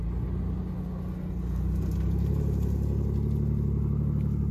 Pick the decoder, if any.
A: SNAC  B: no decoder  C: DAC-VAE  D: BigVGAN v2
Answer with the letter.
B